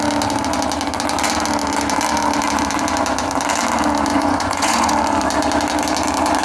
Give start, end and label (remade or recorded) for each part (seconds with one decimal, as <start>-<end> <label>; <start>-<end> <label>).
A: 0.0-4.1 recorded; 4.1-4.9 remade; 4.9-6.4 recorded